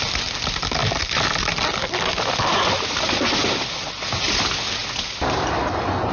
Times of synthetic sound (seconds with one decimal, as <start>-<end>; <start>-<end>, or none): none